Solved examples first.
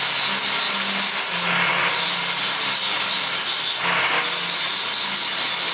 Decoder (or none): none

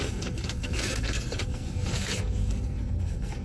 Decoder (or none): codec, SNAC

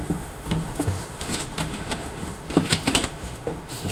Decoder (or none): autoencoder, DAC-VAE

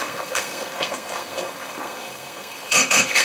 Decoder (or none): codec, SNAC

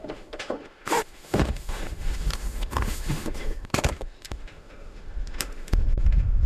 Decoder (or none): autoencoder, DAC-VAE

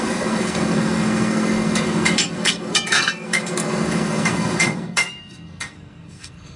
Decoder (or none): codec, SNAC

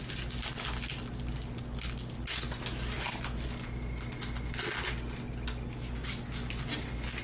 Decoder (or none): none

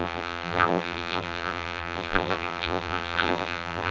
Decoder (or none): vocoder, BigVGAN v2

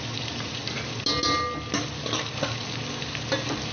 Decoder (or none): none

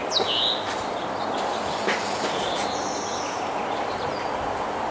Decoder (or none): none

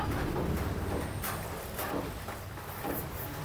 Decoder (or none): none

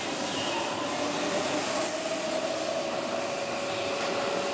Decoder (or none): none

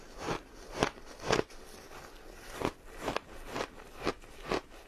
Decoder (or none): none